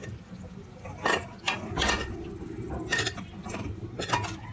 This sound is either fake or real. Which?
real